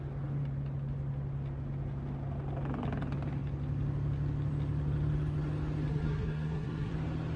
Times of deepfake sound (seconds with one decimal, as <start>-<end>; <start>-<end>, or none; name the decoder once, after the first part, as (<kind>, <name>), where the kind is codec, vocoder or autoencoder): 5.9-6.9 (codec, SNAC)